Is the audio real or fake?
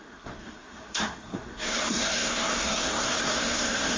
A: fake